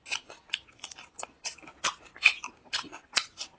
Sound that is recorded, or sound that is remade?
recorded